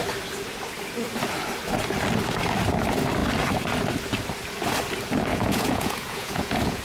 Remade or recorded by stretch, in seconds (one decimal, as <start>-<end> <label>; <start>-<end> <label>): 0.0-5.3 recorded; 5.3-6.8 remade